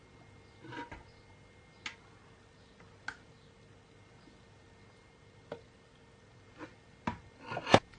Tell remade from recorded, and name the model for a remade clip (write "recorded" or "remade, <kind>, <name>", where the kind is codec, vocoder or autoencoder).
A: recorded